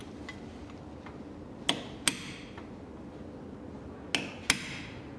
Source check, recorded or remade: recorded